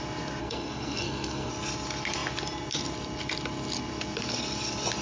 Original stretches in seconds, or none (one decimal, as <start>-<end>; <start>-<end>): 0.0-0.4; 1.5-5.0